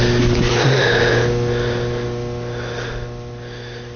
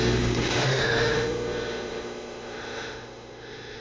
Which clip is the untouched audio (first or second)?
first